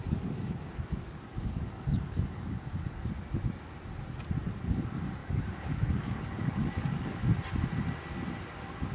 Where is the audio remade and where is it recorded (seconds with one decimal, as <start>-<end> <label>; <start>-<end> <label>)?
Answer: 0.0-3.1 remade; 3.1-5.2 recorded; 5.2-7.2 remade; 7.2-8.9 recorded